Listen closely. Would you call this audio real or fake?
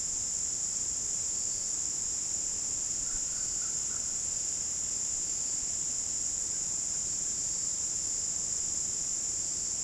fake